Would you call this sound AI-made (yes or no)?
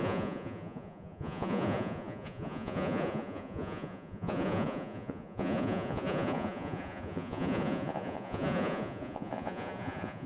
yes